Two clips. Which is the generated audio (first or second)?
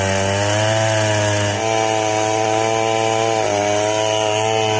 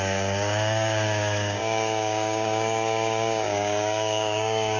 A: second